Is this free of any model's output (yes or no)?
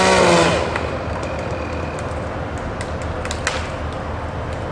yes